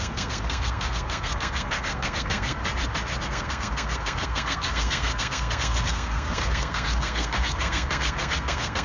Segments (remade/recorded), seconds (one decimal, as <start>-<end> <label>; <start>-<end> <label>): 0.0-2.6 remade; 2.6-3.2 recorded; 3.2-8.8 remade